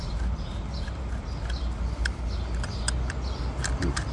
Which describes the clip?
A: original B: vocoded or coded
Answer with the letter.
A